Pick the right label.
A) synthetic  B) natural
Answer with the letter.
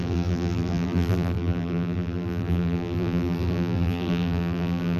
A